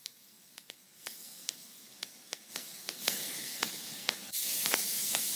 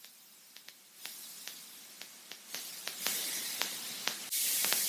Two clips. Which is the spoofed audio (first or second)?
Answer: first